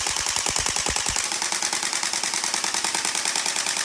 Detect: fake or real real